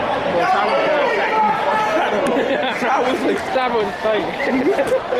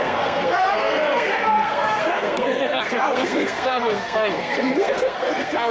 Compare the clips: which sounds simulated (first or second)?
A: second